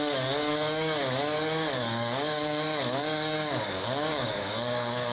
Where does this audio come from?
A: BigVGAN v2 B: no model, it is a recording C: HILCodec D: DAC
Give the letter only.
D